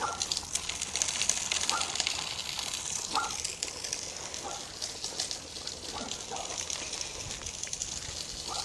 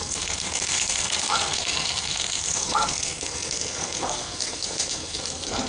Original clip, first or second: first